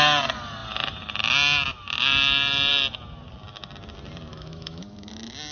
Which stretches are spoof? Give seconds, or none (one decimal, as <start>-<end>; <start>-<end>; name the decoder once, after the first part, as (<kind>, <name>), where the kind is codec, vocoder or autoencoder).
4.3-5.1 (autoencoder, DAC-VAE)